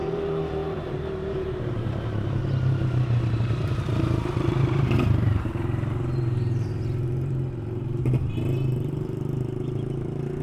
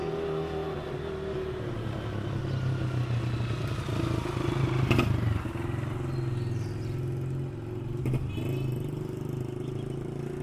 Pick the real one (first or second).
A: second